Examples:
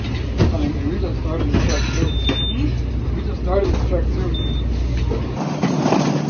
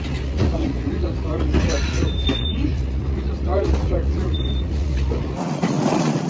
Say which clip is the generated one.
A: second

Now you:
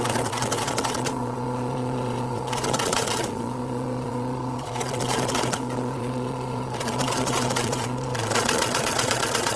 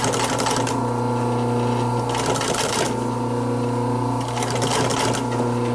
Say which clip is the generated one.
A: first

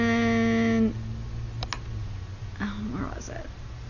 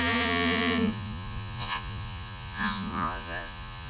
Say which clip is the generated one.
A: second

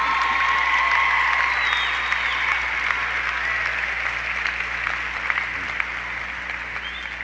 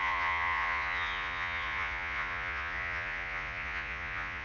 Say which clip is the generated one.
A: second